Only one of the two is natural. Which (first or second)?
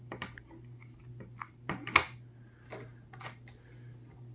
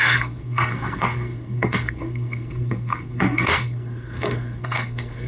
first